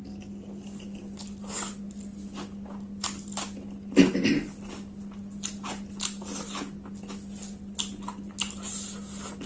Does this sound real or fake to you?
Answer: real